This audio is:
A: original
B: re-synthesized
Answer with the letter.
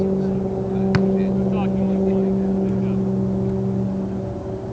A